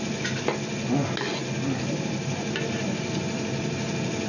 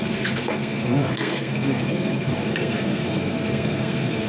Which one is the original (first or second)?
first